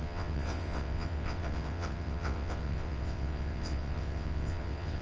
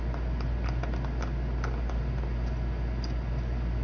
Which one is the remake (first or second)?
first